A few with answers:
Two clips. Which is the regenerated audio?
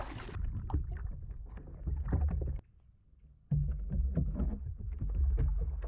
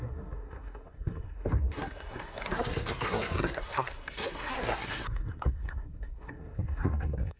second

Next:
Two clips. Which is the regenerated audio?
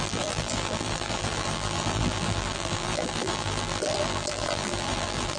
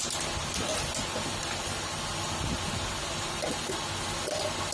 first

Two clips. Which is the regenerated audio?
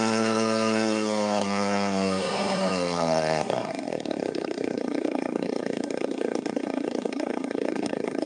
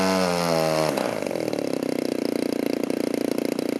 first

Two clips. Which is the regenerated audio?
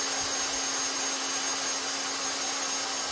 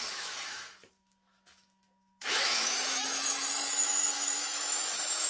second